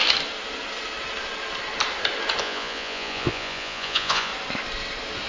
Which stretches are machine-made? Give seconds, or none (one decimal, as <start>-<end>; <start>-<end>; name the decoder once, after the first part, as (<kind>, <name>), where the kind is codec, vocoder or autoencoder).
2.4-4.3 (vocoder, Vocos)